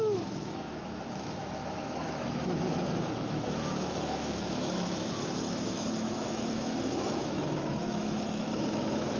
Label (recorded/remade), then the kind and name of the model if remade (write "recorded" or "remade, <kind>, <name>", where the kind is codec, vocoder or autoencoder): remade, autoencoder, DAC-VAE